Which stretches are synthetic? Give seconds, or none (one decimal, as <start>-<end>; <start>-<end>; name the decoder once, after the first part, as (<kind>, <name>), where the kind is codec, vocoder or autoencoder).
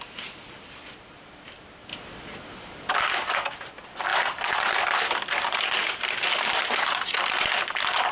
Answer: none